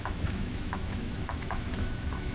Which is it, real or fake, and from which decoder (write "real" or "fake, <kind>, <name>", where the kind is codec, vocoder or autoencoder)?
fake, autoencoder, DAC-VAE